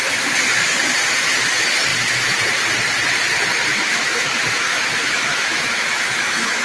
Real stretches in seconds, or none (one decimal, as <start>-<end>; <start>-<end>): 0.0-3.7